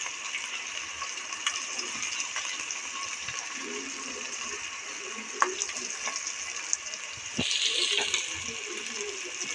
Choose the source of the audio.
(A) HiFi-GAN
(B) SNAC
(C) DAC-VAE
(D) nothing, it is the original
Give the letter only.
D